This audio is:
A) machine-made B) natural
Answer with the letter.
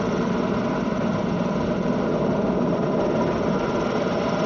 B